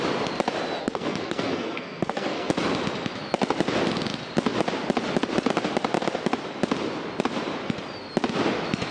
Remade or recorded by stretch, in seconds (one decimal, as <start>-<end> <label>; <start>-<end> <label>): 0.0-0.8 recorded; 0.8-2.5 remade; 2.5-8.9 recorded